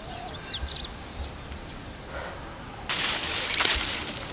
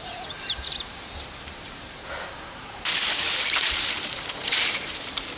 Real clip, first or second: first